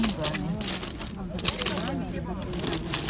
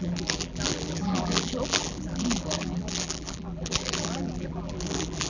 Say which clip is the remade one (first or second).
second